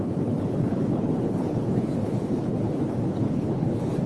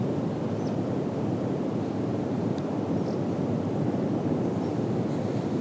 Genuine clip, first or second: second